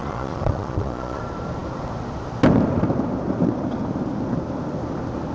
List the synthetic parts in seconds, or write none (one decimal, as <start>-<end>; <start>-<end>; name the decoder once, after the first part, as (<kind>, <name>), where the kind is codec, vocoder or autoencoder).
0.0-1.2 (vocoder, Vocos)